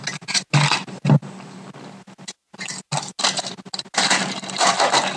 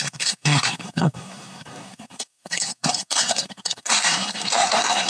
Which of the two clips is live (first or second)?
first